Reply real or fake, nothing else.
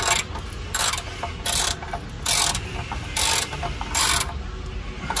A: real